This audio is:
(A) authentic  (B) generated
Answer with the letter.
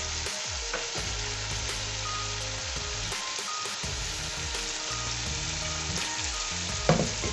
A